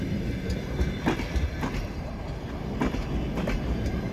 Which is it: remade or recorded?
recorded